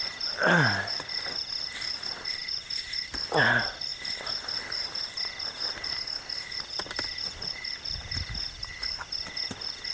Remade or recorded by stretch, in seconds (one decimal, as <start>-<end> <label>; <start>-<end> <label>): 0.0-9.9 recorded